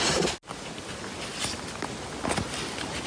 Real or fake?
real